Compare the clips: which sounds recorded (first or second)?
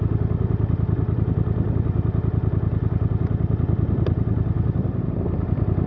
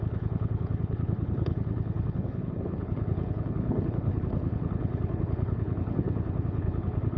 first